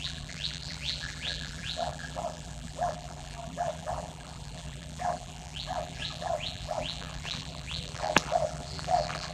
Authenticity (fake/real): fake